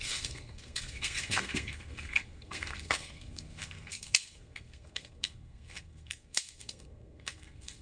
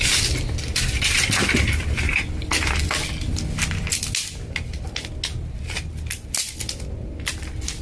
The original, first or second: second